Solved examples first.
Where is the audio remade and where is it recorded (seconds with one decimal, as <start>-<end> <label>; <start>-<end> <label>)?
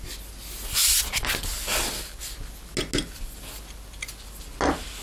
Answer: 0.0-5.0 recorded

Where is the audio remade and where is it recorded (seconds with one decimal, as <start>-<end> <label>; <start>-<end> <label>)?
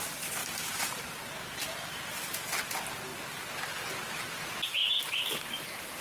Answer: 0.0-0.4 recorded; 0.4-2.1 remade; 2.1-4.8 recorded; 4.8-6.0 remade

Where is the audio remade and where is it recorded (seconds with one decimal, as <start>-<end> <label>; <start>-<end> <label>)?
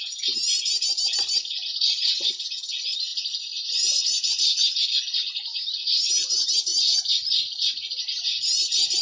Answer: 0.0-3.1 recorded; 3.1-4.3 remade; 4.3-5.5 recorded; 5.5-6.1 remade; 6.1-6.7 recorded; 6.7-7.7 remade; 7.7-9.0 recorded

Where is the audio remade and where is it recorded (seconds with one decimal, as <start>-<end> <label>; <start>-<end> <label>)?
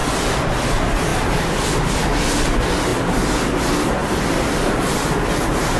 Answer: 0.0-0.7 remade; 0.7-1.1 recorded; 1.1-1.9 remade; 1.9-4.0 recorded; 4.0-4.8 remade; 4.8-5.8 recorded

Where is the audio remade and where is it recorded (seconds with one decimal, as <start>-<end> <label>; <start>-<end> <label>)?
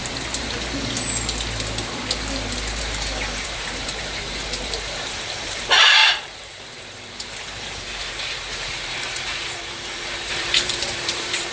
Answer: 0.0-2.8 recorded; 2.8-11.5 remade